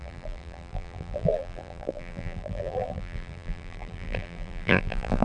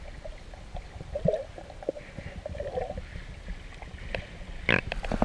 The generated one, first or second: first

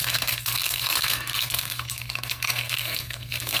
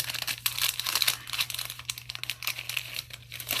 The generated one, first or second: first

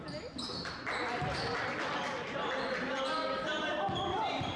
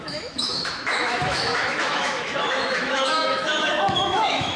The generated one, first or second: second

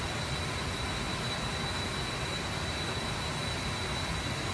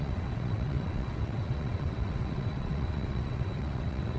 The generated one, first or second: second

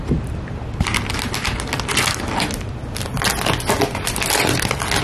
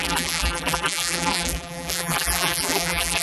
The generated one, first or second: second